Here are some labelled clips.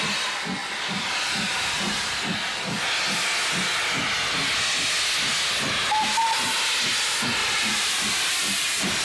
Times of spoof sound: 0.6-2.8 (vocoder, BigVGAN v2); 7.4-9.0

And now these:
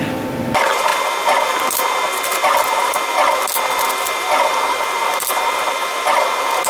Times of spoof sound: none

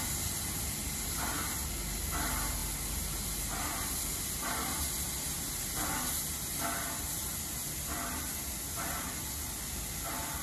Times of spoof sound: none

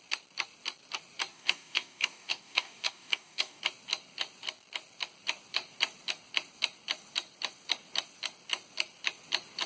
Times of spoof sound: 1.3-3.6 (codec, DAC)

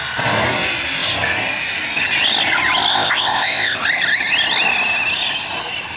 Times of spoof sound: 2.9-3.8 (codec, ZipCodec)

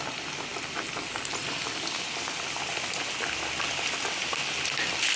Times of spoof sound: none

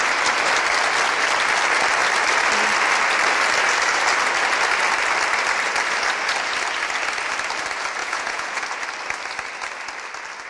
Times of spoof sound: 8.0-8.6 (vocoder, Vocos)